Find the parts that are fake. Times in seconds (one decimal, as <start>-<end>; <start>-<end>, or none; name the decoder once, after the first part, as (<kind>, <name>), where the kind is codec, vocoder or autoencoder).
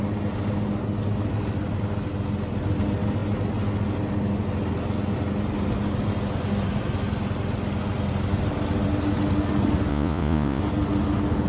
9.9-10.6 (vocoder, Vocos)